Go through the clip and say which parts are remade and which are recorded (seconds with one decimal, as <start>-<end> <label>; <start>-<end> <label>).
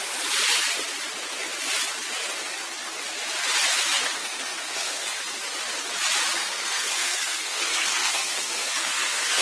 0.0-4.2 recorded; 4.2-5.2 remade; 5.2-6.4 recorded; 6.4-9.4 remade